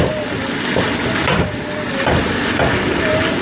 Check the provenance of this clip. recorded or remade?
recorded